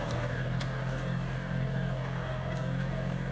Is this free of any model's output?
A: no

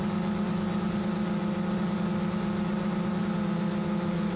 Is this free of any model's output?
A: yes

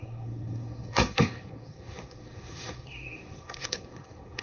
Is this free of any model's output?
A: no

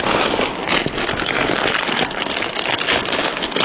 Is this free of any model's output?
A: yes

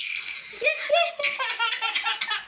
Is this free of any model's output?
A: yes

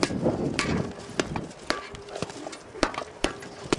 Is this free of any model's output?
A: yes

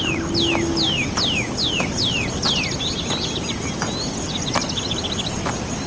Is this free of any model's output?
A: yes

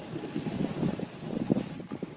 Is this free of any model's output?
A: yes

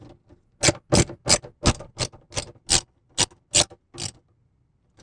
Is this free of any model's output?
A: yes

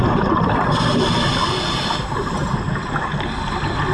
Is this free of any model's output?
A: yes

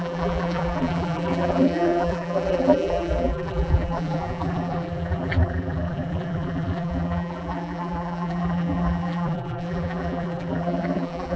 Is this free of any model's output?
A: no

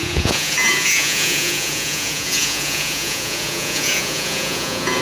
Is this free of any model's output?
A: no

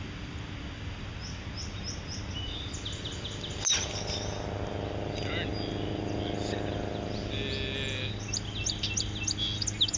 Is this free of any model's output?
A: yes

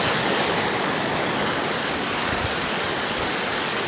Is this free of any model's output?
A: no